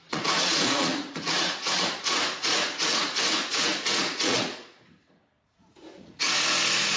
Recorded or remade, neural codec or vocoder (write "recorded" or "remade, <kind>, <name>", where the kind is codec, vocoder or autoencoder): remade, vocoder, Vocos